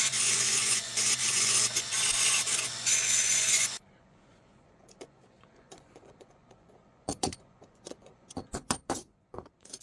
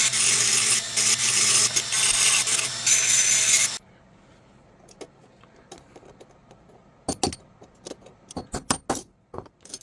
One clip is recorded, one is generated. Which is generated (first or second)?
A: first